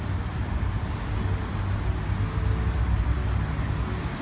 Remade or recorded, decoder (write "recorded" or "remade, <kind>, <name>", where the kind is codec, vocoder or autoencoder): recorded